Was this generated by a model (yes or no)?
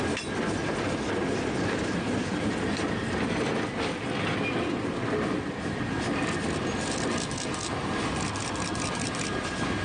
no